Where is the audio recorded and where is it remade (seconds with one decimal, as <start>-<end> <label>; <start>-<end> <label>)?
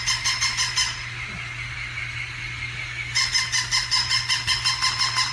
0.0-5.3 recorded